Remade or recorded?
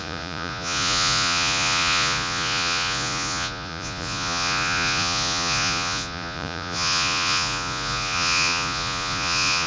remade